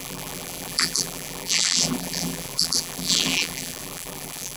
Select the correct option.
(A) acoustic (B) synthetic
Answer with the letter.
B